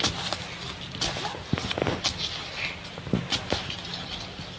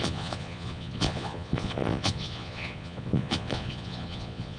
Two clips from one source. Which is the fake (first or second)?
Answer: second